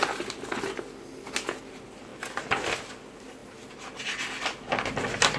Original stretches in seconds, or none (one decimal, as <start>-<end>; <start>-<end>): 0.0-5.4